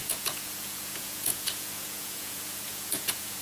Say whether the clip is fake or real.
fake